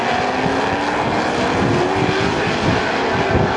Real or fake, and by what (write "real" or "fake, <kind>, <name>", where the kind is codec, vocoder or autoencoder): real